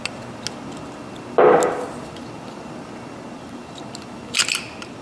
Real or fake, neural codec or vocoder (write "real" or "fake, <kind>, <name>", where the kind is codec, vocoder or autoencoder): real